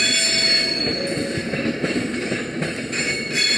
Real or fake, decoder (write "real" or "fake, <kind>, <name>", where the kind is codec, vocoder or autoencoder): real